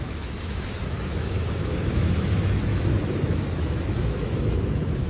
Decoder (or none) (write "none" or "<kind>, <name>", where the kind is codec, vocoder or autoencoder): autoencoder, DAC-VAE